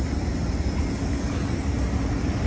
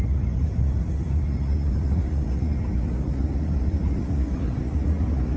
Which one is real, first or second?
first